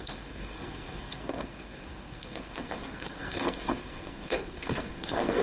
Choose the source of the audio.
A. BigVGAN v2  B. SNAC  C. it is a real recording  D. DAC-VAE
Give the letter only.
B